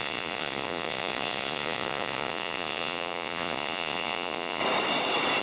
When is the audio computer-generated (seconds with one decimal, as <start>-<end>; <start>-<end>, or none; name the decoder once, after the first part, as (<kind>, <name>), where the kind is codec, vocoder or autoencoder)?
0.0-4.6 (vocoder, Vocos)